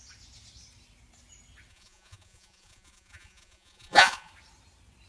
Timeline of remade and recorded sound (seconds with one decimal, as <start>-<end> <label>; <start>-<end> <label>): 0.0-1.7 recorded; 1.7-4.3 remade; 4.3-5.1 recorded

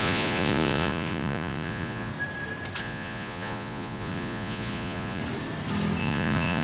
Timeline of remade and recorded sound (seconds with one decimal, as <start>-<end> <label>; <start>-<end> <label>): 0.0-2.1 remade; 2.1-2.8 recorded; 2.8-5.2 remade; 5.2-6.0 recorded; 6.0-6.6 remade

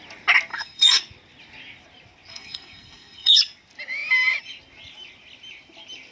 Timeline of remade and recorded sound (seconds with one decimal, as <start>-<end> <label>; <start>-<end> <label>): 0.0-0.5 recorded; 0.5-1.0 remade; 1.0-2.3 recorded; 2.3-3.4 remade; 3.4-6.1 recorded